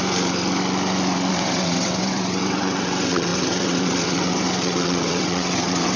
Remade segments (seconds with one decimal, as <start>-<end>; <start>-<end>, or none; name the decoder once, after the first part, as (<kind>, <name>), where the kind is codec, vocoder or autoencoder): 1.3-6.0 (vocoder, WaveNeXt)